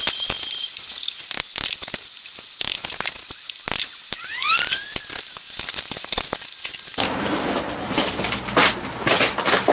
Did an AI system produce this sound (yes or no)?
no